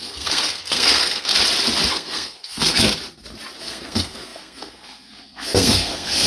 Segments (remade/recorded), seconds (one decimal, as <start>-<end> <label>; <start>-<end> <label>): 0.0-1.3 remade; 1.3-1.9 recorded; 1.9-2.9 remade; 2.9-3.6 recorded; 3.6-6.3 remade